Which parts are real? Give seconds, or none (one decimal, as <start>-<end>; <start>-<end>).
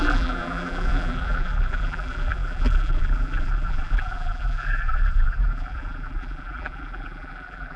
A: none